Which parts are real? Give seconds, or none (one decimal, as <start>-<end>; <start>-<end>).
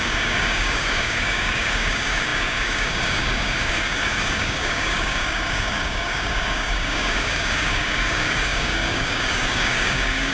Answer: none